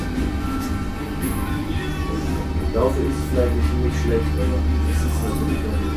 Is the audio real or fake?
real